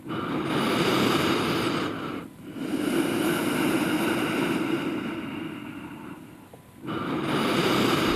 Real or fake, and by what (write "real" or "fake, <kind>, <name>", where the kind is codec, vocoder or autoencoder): real